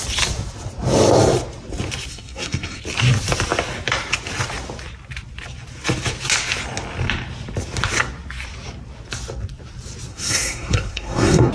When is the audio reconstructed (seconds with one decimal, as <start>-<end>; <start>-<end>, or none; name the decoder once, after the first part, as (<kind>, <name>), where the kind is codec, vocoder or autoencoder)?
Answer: 2.1-2.8 (codec, SNAC); 10.1-11.5